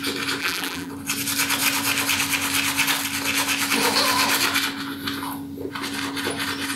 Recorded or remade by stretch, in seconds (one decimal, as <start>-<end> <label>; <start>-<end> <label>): 0.0-0.4 recorded; 0.4-0.9 remade; 0.9-6.8 recorded